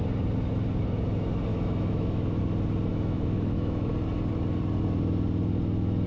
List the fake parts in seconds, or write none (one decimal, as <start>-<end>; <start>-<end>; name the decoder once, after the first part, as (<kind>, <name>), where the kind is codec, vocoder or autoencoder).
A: 1.5-2.4 (autoencoder, DAC-VAE); 2.9-3.9